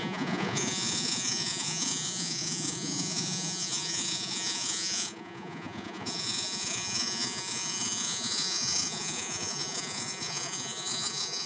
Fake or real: fake